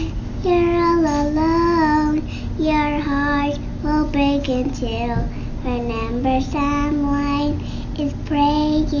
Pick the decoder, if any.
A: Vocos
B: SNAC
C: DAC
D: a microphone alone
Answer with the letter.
D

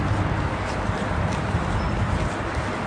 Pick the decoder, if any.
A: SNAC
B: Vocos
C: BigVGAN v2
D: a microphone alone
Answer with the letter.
D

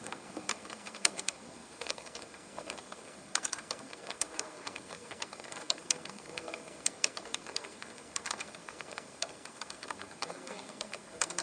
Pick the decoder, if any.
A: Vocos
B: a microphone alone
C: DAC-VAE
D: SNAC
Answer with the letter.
D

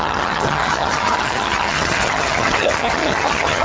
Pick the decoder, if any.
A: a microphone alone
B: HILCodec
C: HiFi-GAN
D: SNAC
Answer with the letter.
C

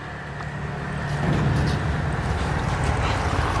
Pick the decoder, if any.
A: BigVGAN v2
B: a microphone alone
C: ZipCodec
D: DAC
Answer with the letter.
B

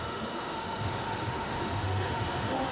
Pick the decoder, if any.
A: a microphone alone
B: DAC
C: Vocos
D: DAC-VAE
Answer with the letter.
D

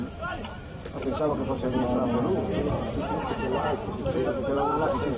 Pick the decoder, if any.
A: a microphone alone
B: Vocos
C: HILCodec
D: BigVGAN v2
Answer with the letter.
D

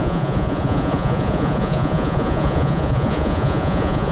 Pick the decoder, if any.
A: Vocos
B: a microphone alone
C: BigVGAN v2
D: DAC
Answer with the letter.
A